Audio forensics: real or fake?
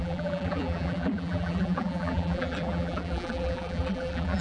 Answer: fake